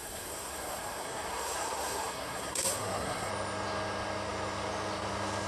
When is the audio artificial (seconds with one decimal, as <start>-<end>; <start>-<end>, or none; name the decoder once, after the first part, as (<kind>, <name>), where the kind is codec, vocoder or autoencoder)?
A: 0.0-3.3 (codec, SNAC)